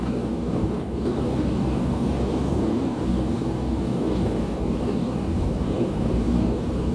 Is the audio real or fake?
fake